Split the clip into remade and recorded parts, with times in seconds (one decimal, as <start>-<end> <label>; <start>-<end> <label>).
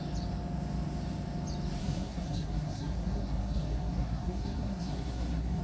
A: 0.0-1.8 recorded; 1.8-5.6 remade